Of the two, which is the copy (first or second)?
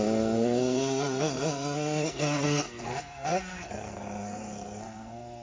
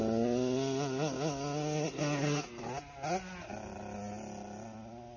first